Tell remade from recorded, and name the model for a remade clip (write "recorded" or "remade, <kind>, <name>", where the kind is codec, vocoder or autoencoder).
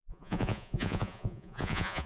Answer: remade, vocoder, Vocos